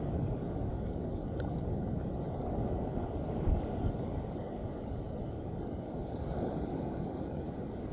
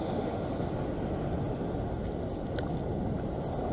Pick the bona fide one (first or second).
second